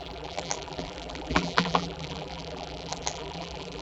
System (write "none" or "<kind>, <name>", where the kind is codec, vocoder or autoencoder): vocoder, BigVGAN v2